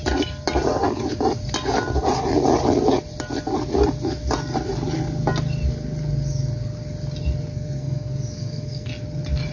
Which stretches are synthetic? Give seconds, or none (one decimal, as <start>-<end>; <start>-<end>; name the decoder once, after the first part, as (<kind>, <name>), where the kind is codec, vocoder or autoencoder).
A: 7.5-8.9 (codec, SNAC)